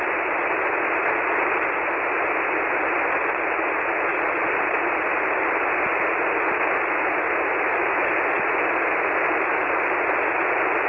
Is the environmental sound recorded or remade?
recorded